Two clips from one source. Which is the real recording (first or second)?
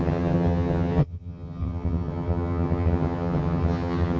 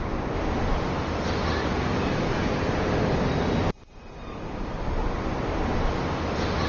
second